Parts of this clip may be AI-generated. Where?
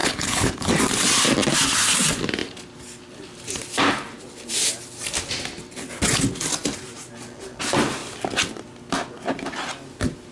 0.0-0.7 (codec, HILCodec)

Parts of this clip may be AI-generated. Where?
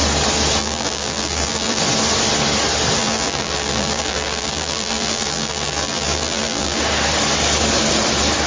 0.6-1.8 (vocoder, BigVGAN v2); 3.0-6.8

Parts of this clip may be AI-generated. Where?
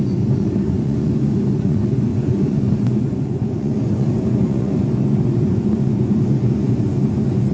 0.0-7.5 (vocoder, Vocos)